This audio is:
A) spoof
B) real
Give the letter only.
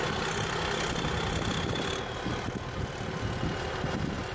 B